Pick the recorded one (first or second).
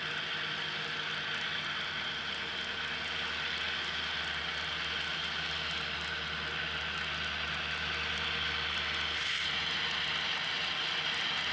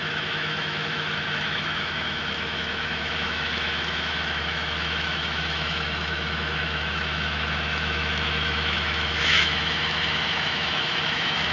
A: first